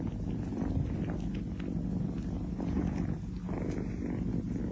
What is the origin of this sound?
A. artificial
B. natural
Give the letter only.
B